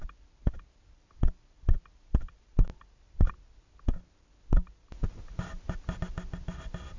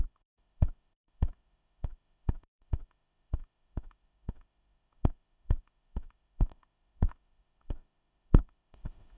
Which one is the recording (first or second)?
first